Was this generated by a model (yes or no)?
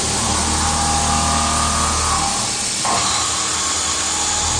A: no